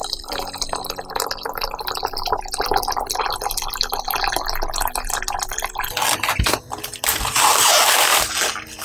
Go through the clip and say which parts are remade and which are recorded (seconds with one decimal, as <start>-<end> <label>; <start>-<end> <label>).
0.0-1.1 remade; 1.1-6.9 recorded; 6.9-8.4 remade; 8.4-8.8 recorded